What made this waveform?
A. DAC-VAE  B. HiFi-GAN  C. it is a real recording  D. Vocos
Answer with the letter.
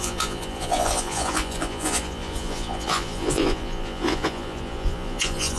D